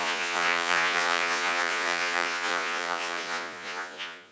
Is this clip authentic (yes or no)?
no